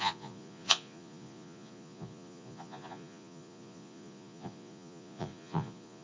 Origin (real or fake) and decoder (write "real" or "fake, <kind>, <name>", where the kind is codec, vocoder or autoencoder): fake, vocoder, Vocos